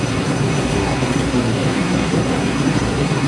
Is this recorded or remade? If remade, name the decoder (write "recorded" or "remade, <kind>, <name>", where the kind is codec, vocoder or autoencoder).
remade, codec, SNAC